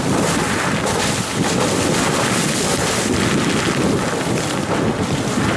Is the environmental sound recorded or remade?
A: recorded